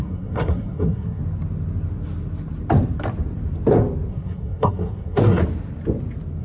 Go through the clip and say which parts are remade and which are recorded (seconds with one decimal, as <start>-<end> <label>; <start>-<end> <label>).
0.0-1.2 remade; 1.2-4.1 recorded; 4.1-5.4 remade; 5.4-6.4 recorded